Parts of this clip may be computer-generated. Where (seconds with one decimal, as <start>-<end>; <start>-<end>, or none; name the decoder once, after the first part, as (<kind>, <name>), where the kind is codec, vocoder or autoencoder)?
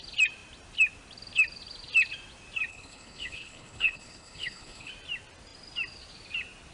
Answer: 2.7-4.9 (codec, HILCodec)